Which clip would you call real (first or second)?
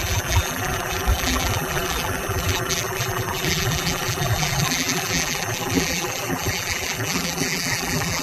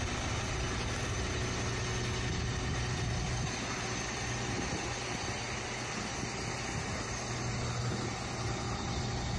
second